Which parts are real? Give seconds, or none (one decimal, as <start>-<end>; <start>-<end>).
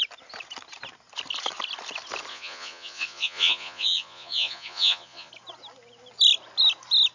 0.0-2.3; 5.3-7.1